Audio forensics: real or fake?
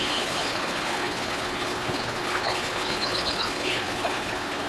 fake